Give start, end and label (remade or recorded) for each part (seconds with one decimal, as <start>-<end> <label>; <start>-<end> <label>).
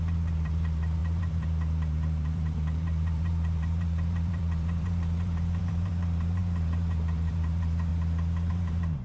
0.0-7.9 remade; 7.9-8.5 recorded; 8.5-9.0 remade